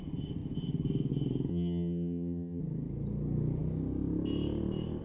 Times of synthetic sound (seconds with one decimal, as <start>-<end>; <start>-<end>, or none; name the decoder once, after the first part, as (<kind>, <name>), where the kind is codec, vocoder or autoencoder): 1.5-2.6 (vocoder, HiFi-GAN)